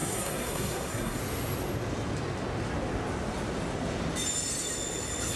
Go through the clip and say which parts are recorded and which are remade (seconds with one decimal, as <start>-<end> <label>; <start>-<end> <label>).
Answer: 0.0-1.2 remade; 1.2-5.4 recorded